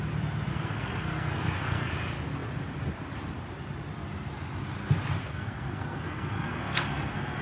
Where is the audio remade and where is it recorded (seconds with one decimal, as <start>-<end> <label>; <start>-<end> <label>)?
0.0-0.5 recorded; 0.5-1.9 remade; 1.9-5.2 recorded; 5.2-7.4 remade